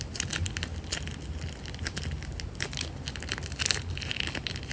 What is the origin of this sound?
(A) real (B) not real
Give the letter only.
A